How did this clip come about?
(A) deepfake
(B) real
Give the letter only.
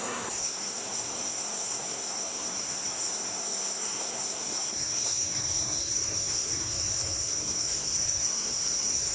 A